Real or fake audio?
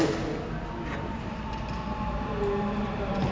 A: real